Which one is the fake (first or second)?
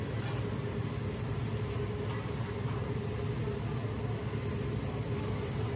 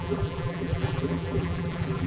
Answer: second